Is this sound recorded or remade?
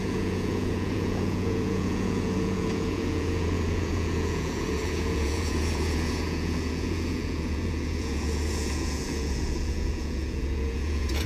remade